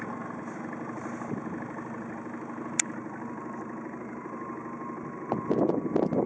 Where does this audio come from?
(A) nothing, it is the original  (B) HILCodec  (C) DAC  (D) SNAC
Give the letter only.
A